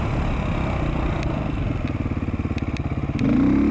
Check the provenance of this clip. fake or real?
real